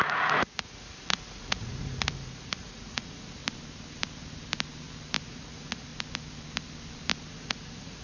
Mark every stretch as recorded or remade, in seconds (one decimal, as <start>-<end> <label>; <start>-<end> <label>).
0.0-3.4 remade; 3.4-5.3 recorded; 5.3-5.9 remade; 5.9-7.3 recorded; 7.3-8.0 remade